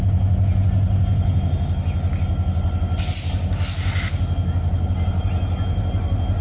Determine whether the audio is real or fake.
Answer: real